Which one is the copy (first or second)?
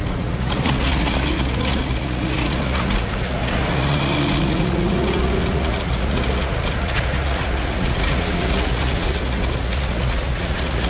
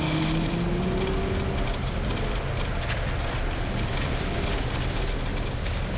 first